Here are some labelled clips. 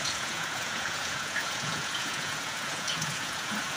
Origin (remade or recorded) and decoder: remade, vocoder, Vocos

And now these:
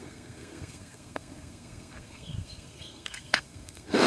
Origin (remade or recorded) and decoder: remade, codec, SNAC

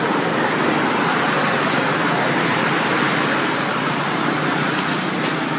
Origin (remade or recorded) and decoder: recorded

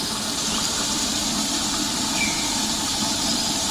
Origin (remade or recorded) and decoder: recorded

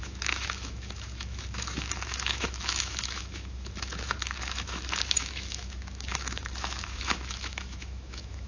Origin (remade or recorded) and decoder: remade, autoencoder, DAC-VAE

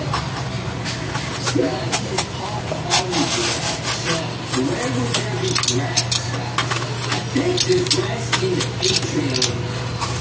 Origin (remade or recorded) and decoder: recorded